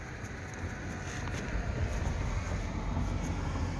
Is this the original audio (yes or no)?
yes